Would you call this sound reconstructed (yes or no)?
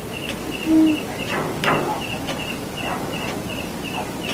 no